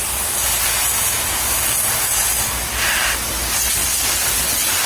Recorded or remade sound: recorded